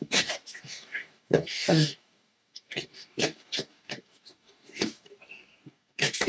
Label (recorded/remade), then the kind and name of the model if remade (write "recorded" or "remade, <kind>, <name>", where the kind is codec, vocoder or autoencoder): remade, codec, DAC